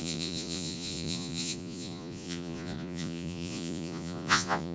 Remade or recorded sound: remade